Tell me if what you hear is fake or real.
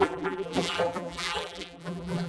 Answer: fake